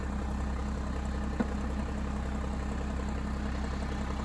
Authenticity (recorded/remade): recorded